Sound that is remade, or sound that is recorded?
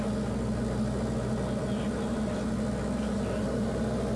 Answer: recorded